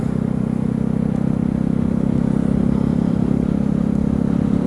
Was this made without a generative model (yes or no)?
yes